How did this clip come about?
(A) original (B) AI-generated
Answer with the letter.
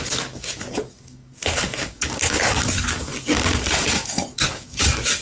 B